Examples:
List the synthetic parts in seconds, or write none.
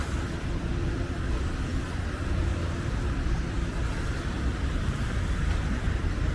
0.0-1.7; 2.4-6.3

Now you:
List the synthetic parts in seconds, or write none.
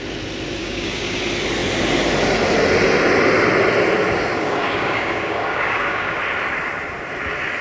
0.6-1.2; 4.3-6.2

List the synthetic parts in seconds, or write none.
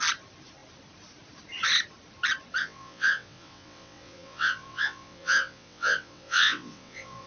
2.6-7.3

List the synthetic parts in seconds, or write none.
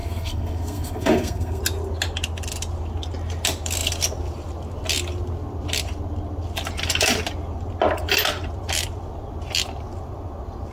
0.0-1.6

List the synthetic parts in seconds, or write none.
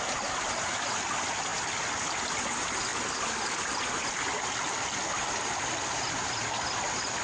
none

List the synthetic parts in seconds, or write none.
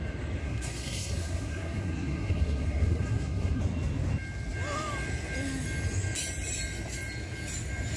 0.4-3.6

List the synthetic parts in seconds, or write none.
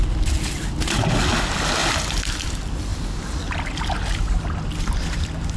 none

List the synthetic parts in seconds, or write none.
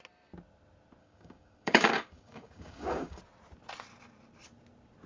1.0-3.2